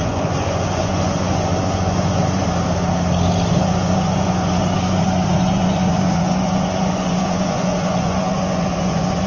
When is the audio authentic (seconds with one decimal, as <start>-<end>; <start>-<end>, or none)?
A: 2.4-3.5

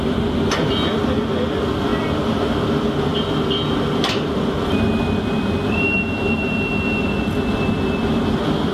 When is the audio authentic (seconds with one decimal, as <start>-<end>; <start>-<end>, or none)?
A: 0.0-8.7

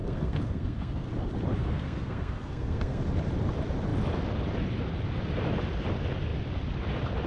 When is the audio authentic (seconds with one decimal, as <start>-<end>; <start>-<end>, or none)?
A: 1.1-1.6; 3.0-7.3